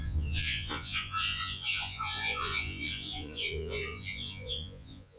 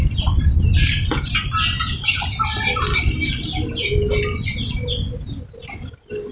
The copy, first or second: first